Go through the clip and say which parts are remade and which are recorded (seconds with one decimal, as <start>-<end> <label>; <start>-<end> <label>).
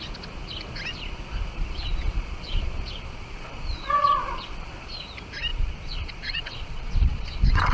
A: 0.0-0.9 recorded; 0.9-4.9 remade; 4.9-5.5 recorded; 5.5-7.7 remade